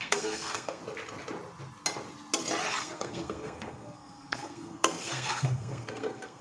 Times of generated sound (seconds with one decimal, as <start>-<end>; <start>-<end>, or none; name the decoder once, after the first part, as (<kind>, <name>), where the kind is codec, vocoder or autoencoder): 0.0-0.8 (codec, SNAC); 2.8-6.4